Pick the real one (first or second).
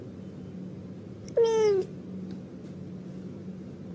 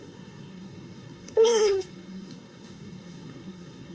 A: first